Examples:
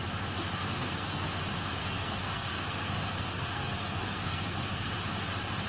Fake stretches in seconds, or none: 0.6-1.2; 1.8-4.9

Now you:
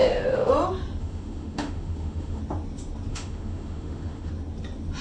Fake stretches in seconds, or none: 0.0-0.5; 1.0-2.4; 3.1-4.3

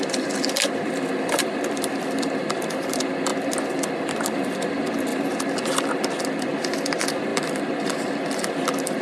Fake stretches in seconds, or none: 0.0-3.3; 4.2-5.1; 6.2-9.0